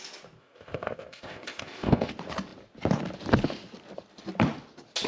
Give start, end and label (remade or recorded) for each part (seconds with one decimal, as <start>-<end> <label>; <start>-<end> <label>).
0.0-0.4 recorded; 0.4-2.1 remade; 2.1-5.1 recorded